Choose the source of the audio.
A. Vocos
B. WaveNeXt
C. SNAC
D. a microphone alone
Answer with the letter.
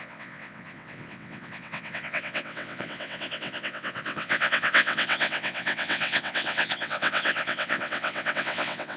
B